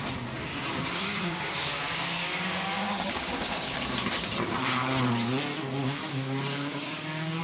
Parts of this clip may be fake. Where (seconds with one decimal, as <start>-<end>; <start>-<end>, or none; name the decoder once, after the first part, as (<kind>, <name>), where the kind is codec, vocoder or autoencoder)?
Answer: 0.5-3.8 (codec, DAC); 5.8-7.4